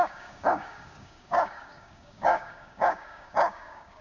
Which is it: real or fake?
fake